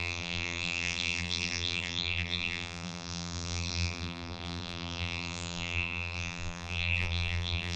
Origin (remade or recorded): remade